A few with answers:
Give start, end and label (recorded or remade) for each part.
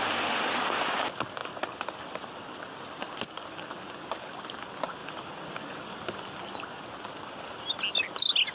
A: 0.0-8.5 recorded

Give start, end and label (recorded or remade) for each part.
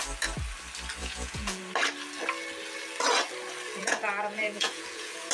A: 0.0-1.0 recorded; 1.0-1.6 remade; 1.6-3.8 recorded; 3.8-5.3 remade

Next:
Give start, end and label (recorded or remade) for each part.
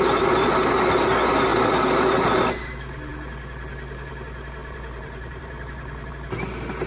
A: 0.0-4.6 recorded; 4.6-6.1 remade; 6.1-6.9 recorded